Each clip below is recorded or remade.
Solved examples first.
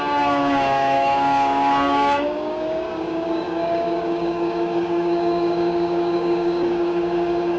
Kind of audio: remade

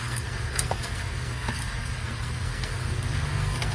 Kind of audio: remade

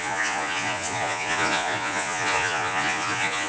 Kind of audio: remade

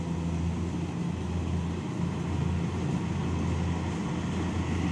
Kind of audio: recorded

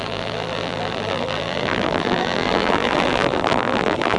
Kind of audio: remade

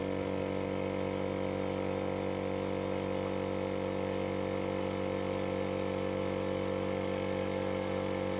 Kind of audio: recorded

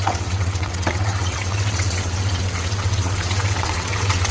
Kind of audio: remade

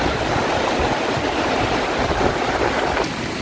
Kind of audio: recorded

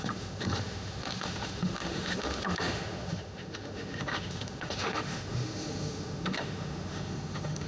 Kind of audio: remade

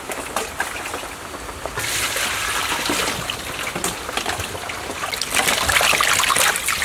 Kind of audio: recorded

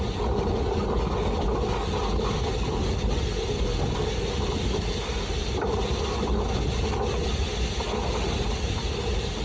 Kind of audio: recorded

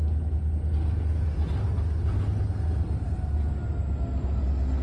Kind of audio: recorded